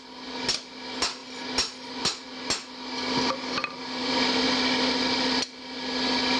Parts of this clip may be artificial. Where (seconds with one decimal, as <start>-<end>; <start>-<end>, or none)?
none